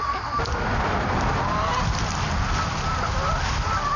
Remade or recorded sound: recorded